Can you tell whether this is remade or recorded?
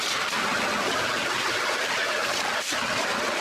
recorded